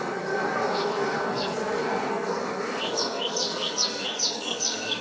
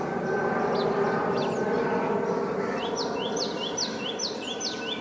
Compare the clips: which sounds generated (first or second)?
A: first